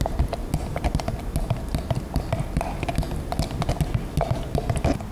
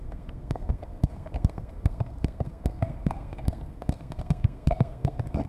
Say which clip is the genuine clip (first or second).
first